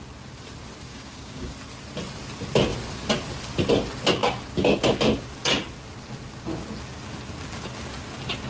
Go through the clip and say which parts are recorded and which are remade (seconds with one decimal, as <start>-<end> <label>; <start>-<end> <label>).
0.0-0.9 recorded; 0.9-1.5 remade; 1.5-8.5 recorded